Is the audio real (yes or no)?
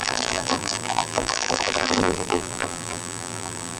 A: no